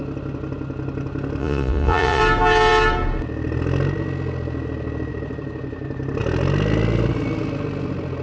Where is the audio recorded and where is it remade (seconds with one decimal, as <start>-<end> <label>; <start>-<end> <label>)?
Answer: 0.0-1.4 recorded; 1.4-2.2 remade; 2.2-8.2 recorded